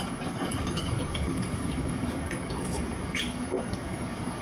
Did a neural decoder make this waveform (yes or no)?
yes